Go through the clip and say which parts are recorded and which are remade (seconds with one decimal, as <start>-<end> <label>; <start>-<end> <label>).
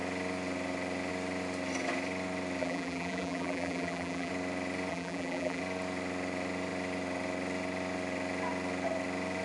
0.0-2.6 recorded; 2.6-4.3 remade; 4.3-4.9 recorded; 4.9-5.6 remade; 5.6-9.4 recorded